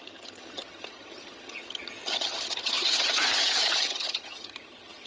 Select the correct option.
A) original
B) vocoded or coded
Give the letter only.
B